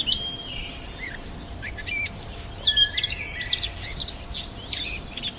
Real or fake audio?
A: real